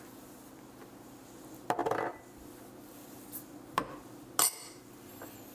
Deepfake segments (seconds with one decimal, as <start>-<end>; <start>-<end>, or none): none